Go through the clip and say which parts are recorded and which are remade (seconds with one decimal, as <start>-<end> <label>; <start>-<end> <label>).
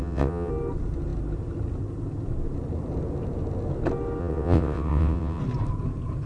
0.0-0.5 remade; 0.5-4.2 recorded; 4.2-5.4 remade; 5.4-6.3 recorded